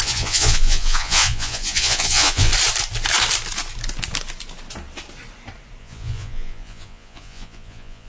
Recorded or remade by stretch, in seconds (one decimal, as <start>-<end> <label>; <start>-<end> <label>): 0.0-2.5 remade; 2.5-5.8 recorded; 5.8-8.1 remade